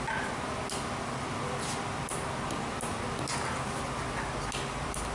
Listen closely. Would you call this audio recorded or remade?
recorded